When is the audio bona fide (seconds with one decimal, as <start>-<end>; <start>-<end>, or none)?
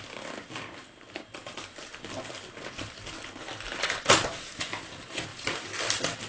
0.0-6.3